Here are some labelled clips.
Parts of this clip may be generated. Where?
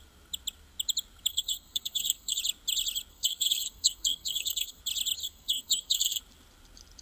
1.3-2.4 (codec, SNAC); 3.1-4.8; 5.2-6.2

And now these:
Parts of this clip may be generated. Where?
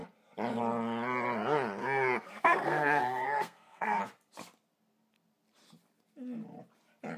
1.8-4.0 (codec, SNAC)